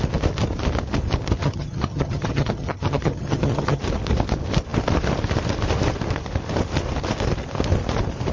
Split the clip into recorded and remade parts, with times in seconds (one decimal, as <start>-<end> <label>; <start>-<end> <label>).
0.0-1.4 recorded; 1.4-3.8 remade; 3.8-8.3 recorded